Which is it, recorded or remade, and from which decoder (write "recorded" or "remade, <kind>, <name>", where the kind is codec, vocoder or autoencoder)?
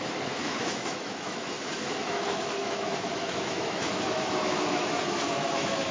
remade, autoencoder, DAC-VAE